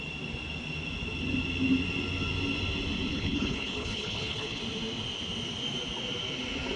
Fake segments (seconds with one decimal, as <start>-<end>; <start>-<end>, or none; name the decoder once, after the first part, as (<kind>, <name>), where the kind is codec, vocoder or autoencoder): 3.1-4.6 (codec, HILCodec)